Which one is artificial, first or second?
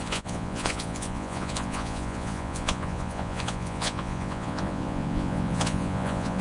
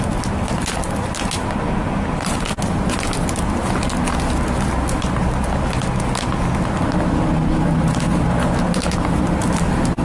first